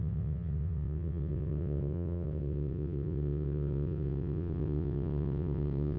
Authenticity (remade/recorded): remade